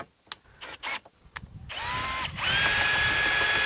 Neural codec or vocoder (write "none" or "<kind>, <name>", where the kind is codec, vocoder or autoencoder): none